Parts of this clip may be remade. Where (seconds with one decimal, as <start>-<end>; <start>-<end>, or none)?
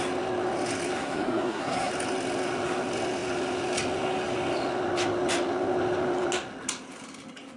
1.0-1.9